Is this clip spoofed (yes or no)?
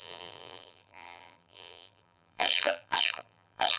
yes